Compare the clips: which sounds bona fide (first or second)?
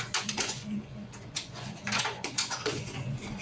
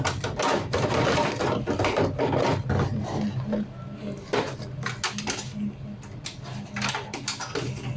second